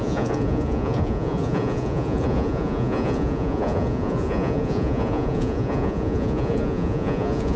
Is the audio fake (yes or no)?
yes